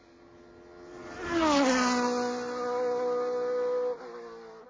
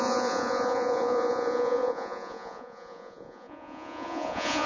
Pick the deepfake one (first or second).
second